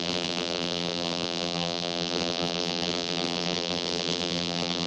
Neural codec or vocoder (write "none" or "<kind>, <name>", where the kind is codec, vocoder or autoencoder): vocoder, BigVGAN v2